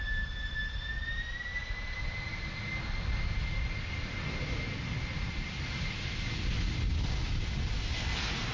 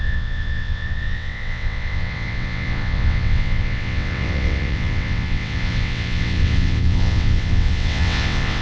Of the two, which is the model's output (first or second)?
second